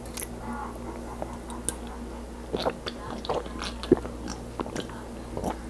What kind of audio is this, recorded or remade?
recorded